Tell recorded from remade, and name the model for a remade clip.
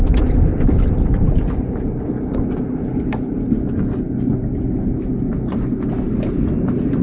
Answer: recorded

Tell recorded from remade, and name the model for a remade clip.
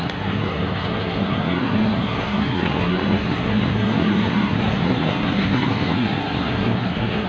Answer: remade, codec, SNAC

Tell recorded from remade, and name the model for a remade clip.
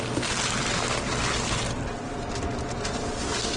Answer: recorded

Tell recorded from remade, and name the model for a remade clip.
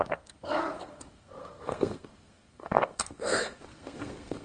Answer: remade, codec, SNAC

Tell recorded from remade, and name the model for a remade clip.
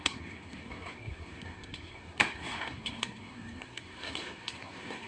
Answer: remade, codec, SNAC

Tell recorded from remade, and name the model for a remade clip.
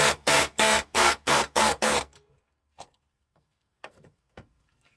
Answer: remade, codec, SNAC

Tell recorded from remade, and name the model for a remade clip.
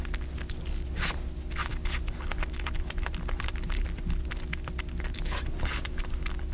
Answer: recorded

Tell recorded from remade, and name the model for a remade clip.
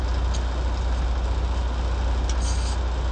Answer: recorded